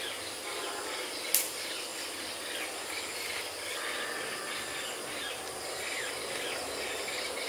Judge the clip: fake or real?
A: real